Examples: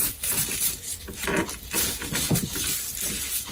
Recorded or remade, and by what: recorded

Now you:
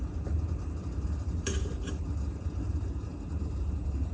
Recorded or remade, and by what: remade, vocoder, BigVGAN v2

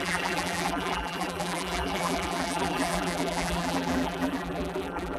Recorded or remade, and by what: remade, vocoder, BigVGAN v2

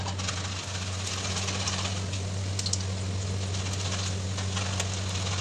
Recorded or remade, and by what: recorded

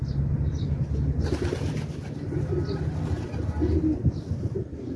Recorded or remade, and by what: recorded